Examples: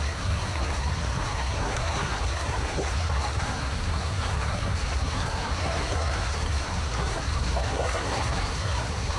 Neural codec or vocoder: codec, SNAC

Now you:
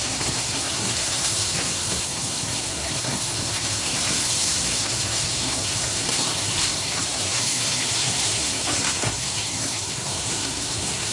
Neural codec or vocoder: codec, SNAC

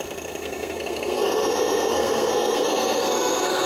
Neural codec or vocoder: codec, SNAC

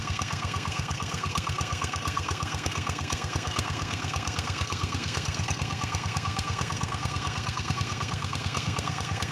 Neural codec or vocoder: codec, SNAC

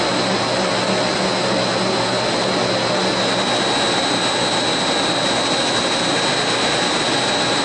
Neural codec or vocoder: none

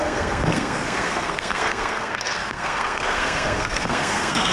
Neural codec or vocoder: codec, SNAC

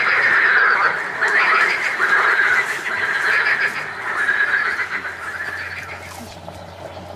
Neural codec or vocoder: none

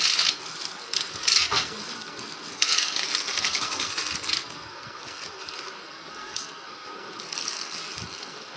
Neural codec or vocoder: codec, SNAC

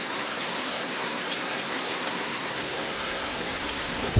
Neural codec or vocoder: codec, SNAC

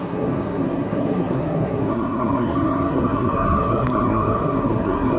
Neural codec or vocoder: codec, SNAC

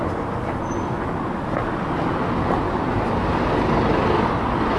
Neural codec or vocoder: none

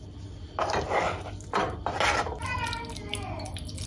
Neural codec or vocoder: none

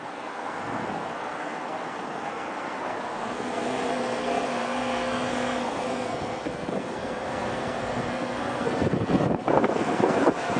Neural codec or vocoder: codec, SNAC